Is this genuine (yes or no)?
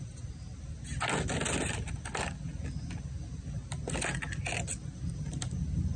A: yes